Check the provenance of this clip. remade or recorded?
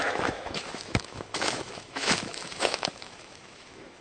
remade